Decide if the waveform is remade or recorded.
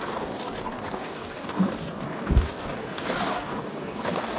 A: remade